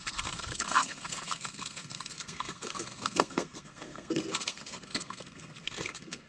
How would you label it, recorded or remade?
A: remade